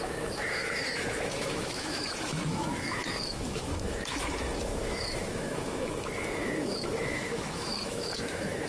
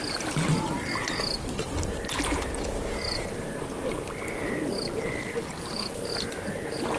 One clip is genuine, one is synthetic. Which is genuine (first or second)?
second